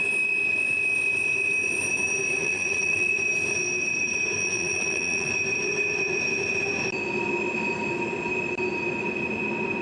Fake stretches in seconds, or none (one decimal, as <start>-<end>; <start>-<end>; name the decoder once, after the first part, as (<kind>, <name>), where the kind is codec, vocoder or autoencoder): 2.4-3.1 (vocoder, Vocos); 4.4-5.3